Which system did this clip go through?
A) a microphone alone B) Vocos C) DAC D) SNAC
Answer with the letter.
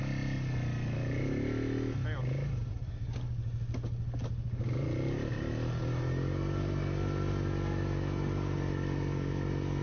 A